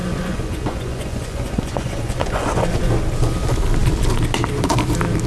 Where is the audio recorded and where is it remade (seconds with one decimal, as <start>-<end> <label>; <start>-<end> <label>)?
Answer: 0.0-2.9 remade; 2.9-5.3 recorded